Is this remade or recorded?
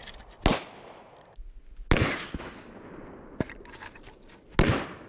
recorded